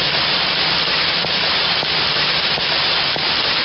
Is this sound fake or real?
real